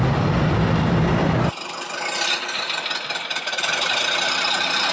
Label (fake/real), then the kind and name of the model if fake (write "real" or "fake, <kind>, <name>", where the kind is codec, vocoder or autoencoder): real